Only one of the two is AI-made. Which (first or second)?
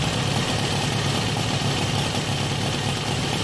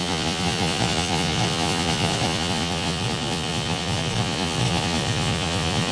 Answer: second